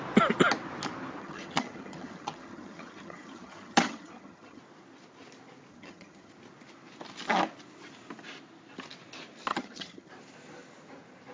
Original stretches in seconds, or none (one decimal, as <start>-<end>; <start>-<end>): 0.0-1.2; 4.6-5.7; 6.3-9.5; 10.1-11.3